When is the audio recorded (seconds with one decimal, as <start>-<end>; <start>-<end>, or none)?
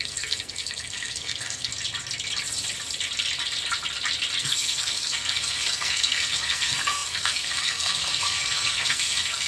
1.7-4.4